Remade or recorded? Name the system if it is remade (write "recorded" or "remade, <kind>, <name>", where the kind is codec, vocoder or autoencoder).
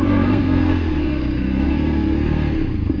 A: remade, codec, SNAC